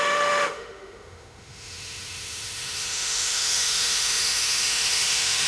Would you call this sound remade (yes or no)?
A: yes